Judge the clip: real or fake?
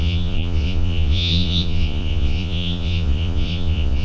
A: fake